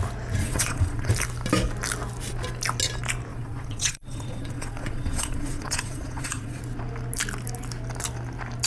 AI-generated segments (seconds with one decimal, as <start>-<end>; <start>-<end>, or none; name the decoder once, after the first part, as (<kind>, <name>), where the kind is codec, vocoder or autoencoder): 0.4-1.1 (vocoder, Vocos); 3.3-6.6